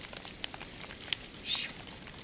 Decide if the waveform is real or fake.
real